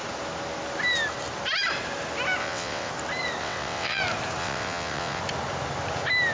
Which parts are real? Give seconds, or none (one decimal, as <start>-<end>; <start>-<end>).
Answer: 0.0-2.4; 2.9-3.4; 4.0-4.4; 5.2-6.3